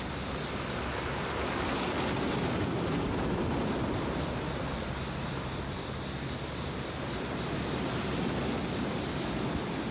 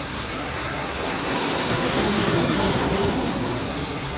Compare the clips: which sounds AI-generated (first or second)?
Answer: second